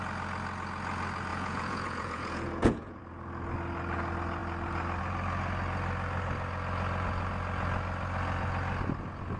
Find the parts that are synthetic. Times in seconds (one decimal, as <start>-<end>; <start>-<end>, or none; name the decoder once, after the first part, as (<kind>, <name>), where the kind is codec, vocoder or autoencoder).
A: 1.3-3.0 (vocoder, Vocos)